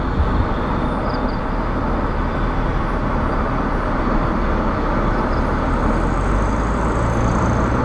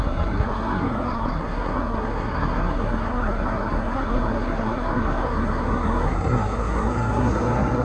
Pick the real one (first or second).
first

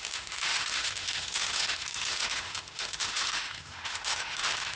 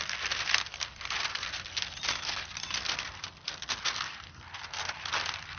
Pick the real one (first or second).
second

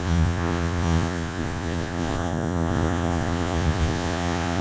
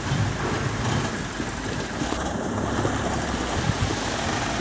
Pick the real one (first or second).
second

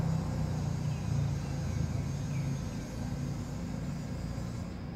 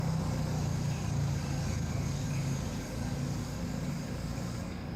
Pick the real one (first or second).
first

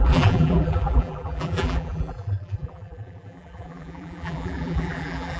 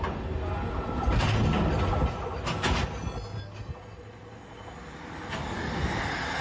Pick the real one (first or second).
second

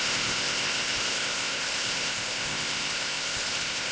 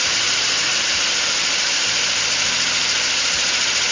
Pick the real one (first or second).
second